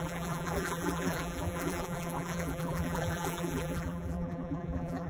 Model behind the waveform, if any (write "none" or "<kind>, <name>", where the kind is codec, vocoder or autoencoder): vocoder, BigVGAN v2